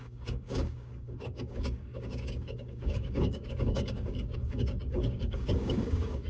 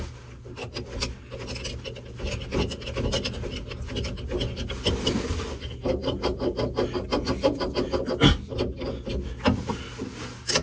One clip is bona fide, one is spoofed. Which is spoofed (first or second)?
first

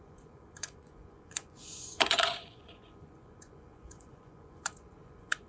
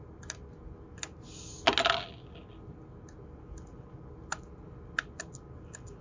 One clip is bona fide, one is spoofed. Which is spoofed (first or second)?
first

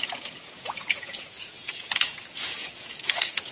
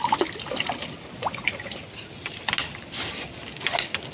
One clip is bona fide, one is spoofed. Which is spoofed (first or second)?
first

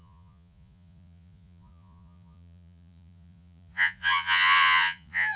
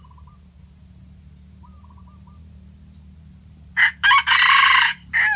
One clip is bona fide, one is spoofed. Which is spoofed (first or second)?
first